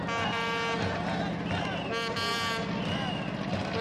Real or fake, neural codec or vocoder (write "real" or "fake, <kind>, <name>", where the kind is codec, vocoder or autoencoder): real